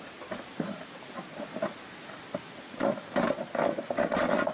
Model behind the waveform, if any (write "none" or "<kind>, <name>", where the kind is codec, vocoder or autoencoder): none